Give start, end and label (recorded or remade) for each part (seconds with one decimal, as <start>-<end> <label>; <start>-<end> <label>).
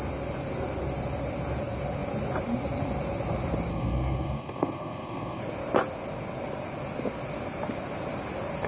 0.0-3.7 recorded; 3.7-5.4 remade; 5.4-8.7 recorded